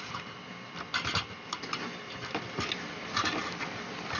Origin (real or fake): real